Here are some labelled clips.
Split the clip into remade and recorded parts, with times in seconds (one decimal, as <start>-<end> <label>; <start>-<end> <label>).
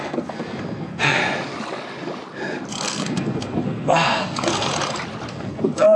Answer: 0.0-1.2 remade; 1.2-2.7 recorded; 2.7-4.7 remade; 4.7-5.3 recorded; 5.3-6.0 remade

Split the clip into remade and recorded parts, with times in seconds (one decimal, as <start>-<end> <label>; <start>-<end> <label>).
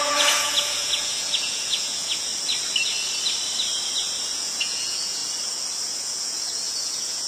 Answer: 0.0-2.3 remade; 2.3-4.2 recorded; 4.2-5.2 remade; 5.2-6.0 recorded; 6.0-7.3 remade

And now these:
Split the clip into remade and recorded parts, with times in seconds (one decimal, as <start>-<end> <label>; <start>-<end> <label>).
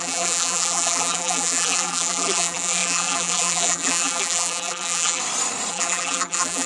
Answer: 0.0-5.2 remade; 5.2-5.7 recorded; 5.7-6.7 remade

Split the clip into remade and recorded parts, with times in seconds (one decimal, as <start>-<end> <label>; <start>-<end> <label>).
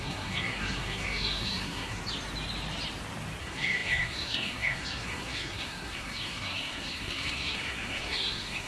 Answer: 0.0-2.0 remade; 2.0-3.4 recorded; 3.4-8.7 remade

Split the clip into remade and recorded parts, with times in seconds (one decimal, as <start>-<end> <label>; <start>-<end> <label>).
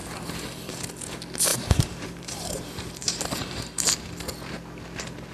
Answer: 0.0-0.7 remade; 0.7-1.5 recorded; 1.5-4.1 remade; 4.1-5.3 recorded